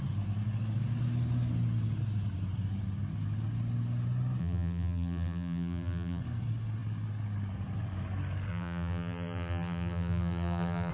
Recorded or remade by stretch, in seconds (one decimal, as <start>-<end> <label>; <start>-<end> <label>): 0.0-4.4 recorded; 4.4-6.2 remade; 6.2-8.5 recorded; 8.5-10.9 remade